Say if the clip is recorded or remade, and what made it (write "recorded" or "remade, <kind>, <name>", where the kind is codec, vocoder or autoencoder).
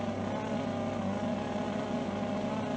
recorded